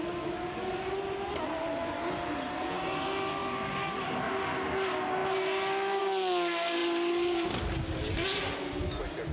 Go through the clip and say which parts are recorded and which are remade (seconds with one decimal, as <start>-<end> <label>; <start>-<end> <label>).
0.0-9.3 recorded